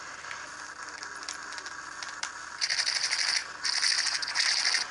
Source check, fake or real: real